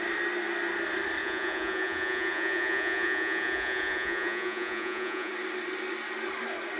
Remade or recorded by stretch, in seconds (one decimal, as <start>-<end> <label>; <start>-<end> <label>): 0.0-1.2 recorded; 1.2-5.3 remade; 5.3-6.8 recorded